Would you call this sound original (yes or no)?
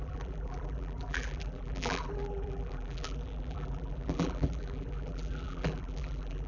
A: no